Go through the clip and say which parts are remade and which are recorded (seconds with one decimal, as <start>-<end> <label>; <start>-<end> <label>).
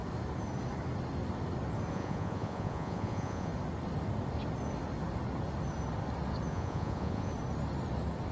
0.0-1.9 recorded; 1.9-3.5 remade; 3.5-6.5 recorded; 6.5-7.3 remade; 7.3-8.3 recorded